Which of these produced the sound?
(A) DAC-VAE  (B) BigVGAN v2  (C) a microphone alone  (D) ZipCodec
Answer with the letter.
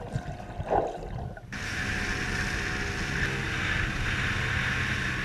C